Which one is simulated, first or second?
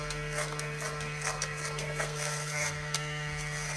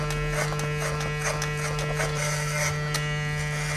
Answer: first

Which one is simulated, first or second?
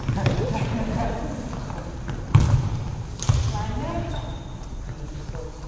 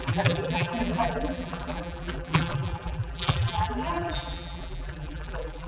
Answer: second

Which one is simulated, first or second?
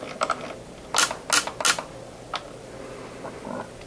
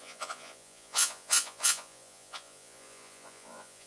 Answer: second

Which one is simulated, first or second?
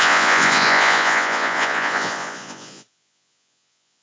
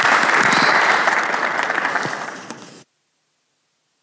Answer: first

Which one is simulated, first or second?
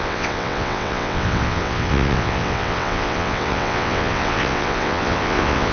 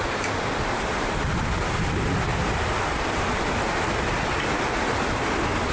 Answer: first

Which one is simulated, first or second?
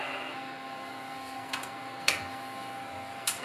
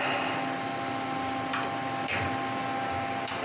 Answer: first